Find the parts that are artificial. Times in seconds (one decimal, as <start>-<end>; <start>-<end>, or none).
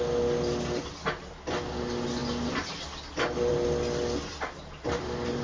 none